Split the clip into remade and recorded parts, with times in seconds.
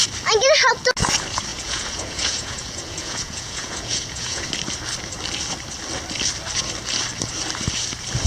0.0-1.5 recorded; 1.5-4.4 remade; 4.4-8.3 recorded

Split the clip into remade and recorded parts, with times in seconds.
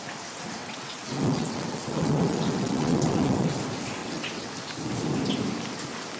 0.0-0.6 recorded; 0.6-3.6 remade; 3.6-4.0 recorded; 4.0-4.5 remade; 4.5-6.2 recorded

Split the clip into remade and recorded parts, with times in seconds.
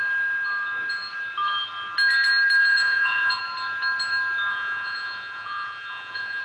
0.0-2.6 recorded; 2.6-3.4 remade; 3.4-4.5 recorded; 4.5-6.4 remade